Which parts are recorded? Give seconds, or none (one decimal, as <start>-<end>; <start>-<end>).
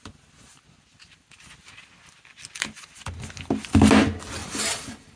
0.0-4.4